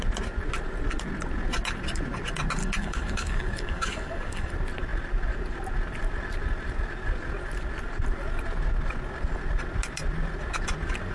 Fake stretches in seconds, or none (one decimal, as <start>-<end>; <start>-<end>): 2.6-4.5

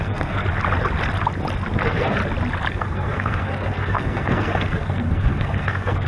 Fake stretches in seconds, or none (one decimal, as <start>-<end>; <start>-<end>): 0.0-0.4; 1.8-2.2; 2.7-6.1

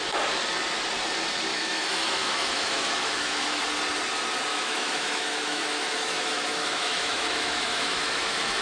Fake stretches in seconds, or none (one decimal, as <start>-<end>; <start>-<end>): 1.5-3.6; 4.5-8.6

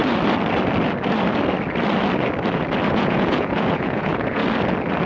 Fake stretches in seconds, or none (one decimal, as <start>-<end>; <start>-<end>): 2.9-4.4

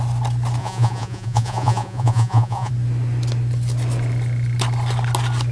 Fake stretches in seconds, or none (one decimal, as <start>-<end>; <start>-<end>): 0.6-2.7

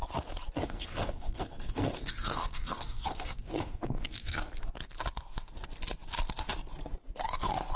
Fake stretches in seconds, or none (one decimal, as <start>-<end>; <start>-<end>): 0.6-4.4

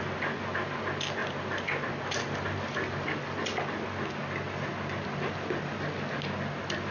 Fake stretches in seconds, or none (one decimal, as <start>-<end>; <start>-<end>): none